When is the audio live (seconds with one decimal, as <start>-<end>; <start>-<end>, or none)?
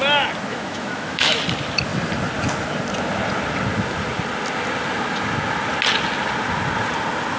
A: 0.0-0.5; 1.4-7.4